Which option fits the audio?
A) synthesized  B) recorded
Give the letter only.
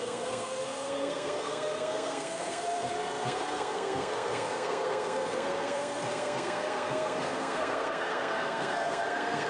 A